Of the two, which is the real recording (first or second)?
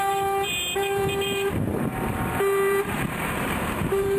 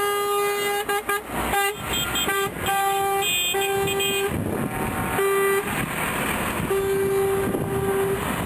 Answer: second